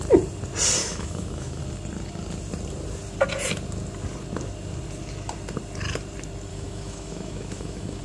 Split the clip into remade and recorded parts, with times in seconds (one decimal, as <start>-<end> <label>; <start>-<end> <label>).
0.0-0.8 recorded; 0.8-1.6 remade; 1.6-6.5 recorded; 6.5-8.0 remade